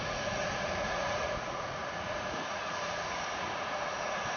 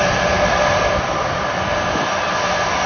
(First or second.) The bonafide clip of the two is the second